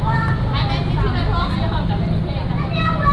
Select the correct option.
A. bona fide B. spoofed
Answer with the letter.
A